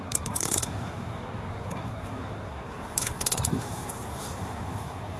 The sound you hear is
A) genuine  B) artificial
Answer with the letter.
B